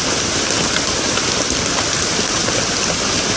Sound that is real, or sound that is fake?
real